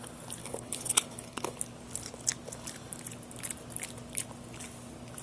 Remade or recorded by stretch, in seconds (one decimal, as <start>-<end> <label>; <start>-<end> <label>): 0.0-0.4 recorded; 0.4-1.6 remade; 1.6-5.2 recorded